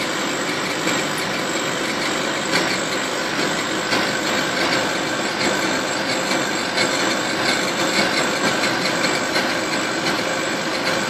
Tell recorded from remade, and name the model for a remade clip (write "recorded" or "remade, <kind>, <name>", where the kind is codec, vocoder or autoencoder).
recorded